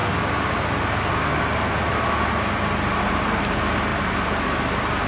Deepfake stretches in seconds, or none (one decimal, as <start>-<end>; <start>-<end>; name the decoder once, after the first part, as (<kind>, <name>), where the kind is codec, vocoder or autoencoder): none

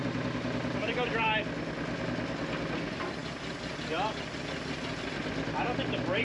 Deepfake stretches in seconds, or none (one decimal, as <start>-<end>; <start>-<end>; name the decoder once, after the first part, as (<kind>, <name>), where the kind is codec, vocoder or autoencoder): none

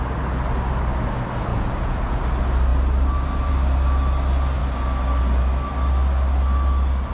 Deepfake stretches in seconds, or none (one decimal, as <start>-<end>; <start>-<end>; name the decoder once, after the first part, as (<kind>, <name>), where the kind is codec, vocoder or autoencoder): 1.5-2.2 (vocoder, Vocos)

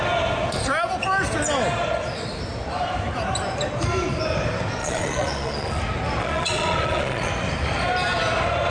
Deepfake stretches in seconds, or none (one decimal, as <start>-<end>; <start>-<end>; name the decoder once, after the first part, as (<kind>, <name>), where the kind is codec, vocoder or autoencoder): 4.8-5.8 (vocoder, Vocos); 6.2-7.3

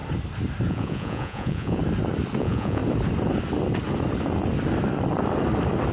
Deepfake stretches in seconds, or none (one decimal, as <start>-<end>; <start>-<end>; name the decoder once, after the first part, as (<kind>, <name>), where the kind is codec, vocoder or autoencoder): 0.7-1.8 (vocoder, Vocos); 2.4-2.8

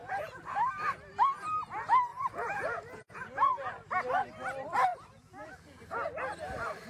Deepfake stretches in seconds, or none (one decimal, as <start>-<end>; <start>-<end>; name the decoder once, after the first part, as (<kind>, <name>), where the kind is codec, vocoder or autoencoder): 0.0-0.7 (vocoder, Vocos); 2.1-3.7; 4.9-5.8